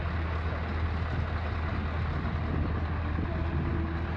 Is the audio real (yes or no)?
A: yes